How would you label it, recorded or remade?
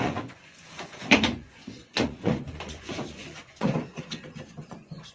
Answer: remade